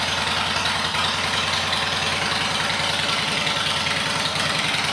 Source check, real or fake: real